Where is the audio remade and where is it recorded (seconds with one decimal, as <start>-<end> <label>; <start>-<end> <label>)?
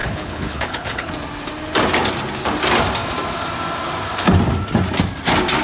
0.0-1.1 remade; 1.1-5.6 recorded